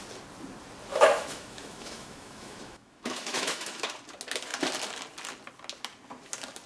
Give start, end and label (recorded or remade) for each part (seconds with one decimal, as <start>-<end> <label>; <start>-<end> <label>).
0.0-0.9 recorded; 0.9-3.9 remade; 3.9-6.7 recorded